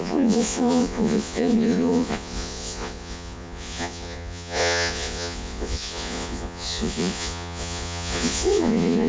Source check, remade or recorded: remade